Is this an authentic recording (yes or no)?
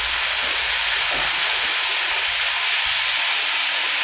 yes